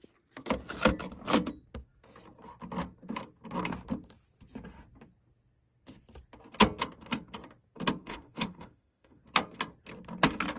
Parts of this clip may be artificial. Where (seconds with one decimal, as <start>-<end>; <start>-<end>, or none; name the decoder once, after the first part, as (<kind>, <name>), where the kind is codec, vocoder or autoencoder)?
8.0-9.2 (autoencoder, DAC-VAE)